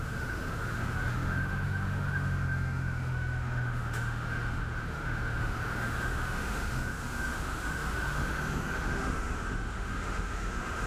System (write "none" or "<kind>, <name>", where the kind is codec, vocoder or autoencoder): autoencoder, DAC-VAE